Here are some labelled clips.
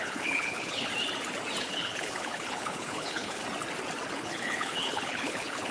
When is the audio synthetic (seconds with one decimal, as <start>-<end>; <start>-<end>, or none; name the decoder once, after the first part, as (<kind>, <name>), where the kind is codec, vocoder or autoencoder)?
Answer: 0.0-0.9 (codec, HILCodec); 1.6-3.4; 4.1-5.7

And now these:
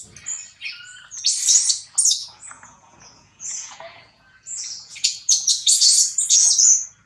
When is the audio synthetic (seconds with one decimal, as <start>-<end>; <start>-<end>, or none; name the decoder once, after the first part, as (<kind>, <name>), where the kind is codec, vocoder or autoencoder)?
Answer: 2.2-6.5 (vocoder, Vocos)

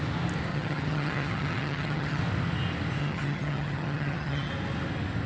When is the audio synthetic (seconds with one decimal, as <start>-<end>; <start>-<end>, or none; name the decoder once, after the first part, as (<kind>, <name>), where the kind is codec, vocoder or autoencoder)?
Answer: 0.5-2.2 (vocoder, HiFi-GAN); 3.0-4.5